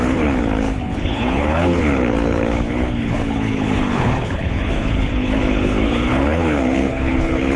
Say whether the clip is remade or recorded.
remade